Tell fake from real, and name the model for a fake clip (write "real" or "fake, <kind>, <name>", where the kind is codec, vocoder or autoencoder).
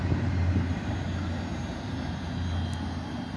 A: real